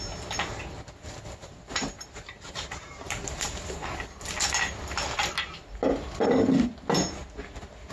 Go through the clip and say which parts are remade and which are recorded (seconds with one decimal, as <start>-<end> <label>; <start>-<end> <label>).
0.0-1.4 recorded; 1.4-3.8 remade; 3.8-7.9 recorded